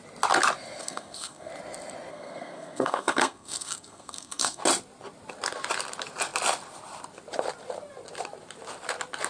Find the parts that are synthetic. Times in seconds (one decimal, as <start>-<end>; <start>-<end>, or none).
0.8-1.5; 2.1-4.6